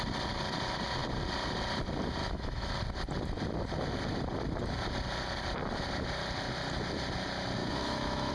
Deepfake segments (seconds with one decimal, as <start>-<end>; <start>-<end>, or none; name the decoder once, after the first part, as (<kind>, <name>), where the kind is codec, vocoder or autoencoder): 2.2-2.7 (autoencoder, DAC-VAE); 7.6-8.3